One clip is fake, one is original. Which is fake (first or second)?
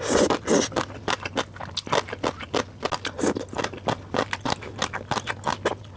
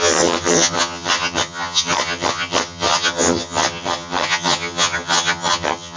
second